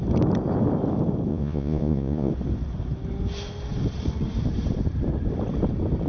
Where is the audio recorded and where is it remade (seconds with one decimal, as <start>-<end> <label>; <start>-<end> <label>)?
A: 0.0-1.3 recorded; 1.3-2.3 remade; 2.3-6.1 recorded

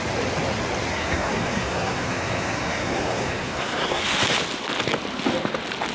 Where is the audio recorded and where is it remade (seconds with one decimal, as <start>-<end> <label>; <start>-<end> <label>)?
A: 0.0-0.9 recorded; 0.9-4.0 remade; 4.0-5.9 recorded

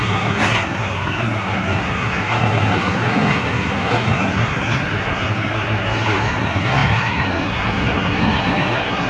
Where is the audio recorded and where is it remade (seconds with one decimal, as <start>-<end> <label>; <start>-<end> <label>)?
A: 0.0-9.1 remade